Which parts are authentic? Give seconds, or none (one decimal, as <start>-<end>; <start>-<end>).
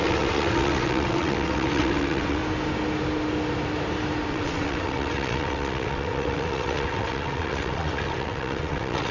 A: 2.4-4.3